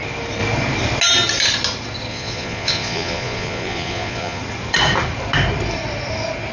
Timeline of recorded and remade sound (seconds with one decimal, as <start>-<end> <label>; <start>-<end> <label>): 0.0-2.1 recorded; 2.1-4.4 remade; 4.4-6.5 recorded